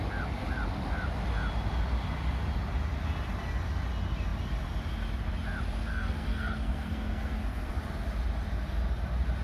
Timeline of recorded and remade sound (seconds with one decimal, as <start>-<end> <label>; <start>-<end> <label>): 0.0-5.9 recorded; 5.9-7.7 remade; 7.7-9.4 recorded